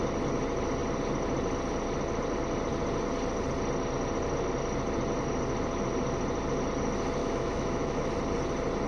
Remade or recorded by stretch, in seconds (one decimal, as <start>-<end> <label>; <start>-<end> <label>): 0.0-7.2 recorded; 7.2-8.1 remade; 8.1-8.9 recorded